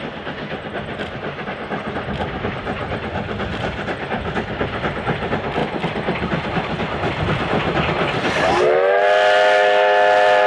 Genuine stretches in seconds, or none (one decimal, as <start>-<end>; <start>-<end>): 0.0-10.5